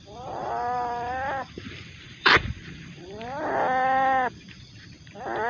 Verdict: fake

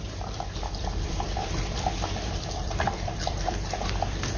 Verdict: fake